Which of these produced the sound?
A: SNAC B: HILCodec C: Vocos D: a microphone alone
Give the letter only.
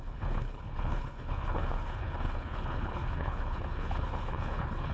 B